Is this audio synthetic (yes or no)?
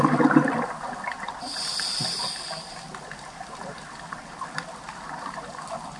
no